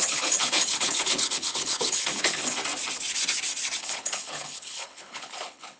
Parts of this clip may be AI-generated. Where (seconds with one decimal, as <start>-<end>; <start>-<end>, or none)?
0.0-2.6; 3.8-5.8